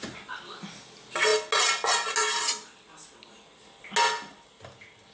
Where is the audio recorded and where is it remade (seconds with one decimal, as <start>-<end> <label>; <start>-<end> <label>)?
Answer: 0.0-5.1 recorded